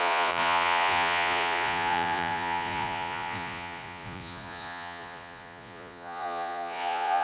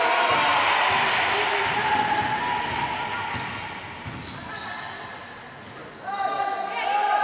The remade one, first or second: first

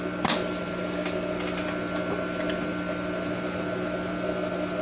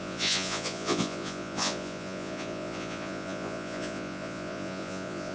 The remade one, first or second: second